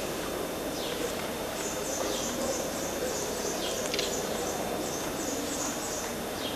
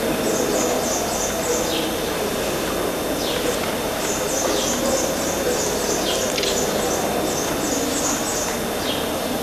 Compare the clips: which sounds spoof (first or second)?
first